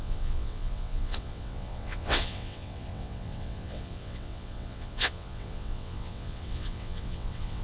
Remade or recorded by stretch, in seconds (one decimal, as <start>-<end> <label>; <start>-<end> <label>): 0.0-7.6 remade